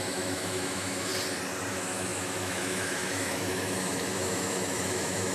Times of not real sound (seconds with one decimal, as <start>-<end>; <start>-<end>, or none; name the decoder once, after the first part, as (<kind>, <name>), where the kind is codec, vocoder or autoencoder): 0.0-1.1 (autoencoder, DAC-VAE); 1.7-5.3